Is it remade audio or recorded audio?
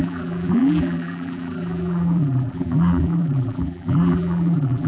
remade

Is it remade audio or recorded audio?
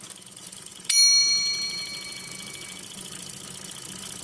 recorded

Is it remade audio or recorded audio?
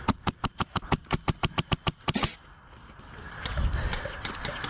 recorded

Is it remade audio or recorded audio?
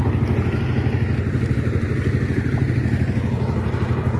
recorded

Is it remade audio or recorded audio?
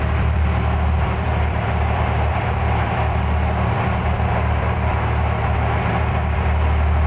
remade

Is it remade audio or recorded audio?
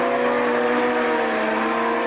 recorded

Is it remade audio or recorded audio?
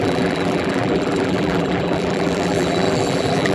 remade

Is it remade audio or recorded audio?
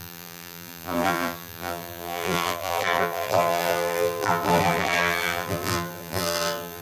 remade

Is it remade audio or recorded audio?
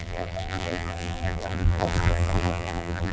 remade